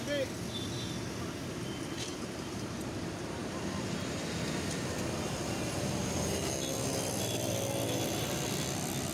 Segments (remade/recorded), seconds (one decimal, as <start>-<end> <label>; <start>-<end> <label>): 0.0-2.1 recorded; 2.1-2.8 remade; 2.8-9.1 recorded

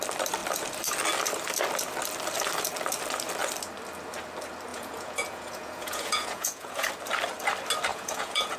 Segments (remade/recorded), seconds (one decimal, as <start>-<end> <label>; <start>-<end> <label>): 0.0-4.7 recorded; 4.7-6.9 remade; 6.9-7.9 recorded; 7.9-8.6 remade

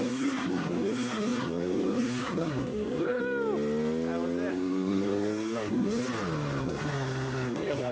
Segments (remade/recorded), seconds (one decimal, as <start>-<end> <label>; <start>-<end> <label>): 0.0-3.2 remade; 3.2-4.5 recorded; 4.5-6.0 remade; 6.0-6.6 recorded; 6.6-7.9 remade

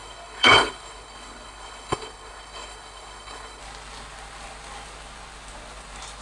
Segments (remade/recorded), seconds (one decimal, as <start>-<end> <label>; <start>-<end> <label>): 0.0-3.6 remade; 3.6-6.2 recorded